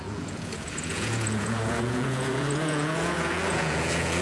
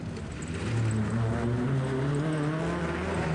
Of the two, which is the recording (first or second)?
second